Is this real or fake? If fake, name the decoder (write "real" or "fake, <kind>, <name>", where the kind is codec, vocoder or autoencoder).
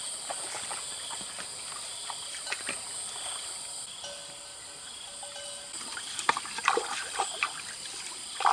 real